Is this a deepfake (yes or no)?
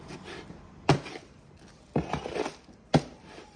yes